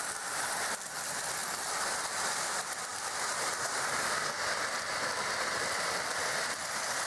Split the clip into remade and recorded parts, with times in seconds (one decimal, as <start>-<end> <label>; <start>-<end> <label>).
0.0-7.1 recorded